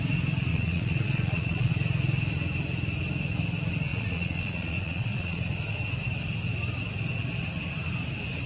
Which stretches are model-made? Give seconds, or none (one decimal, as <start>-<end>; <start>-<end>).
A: 0.5-1.7; 3.9-5.4